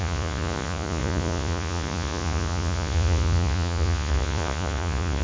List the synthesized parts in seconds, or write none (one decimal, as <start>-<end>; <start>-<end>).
0.0-5.2